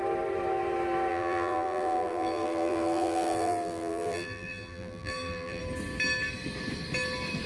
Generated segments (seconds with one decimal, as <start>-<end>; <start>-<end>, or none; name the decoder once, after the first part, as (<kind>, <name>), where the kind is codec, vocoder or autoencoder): 1.1-5.6 (vocoder, BigVGAN v2)